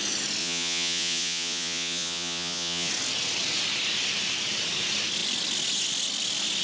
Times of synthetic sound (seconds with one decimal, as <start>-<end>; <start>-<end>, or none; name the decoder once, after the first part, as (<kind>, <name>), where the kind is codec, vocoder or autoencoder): 0.4-2.9 (vocoder, Vocos)